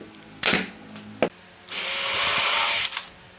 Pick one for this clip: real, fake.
real